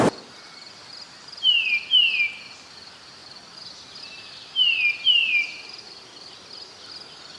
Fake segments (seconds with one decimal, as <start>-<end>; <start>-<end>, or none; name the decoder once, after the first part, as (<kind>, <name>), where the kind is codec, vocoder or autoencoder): 3.2-4.0 (vocoder, BigVGAN v2); 5.2-6.1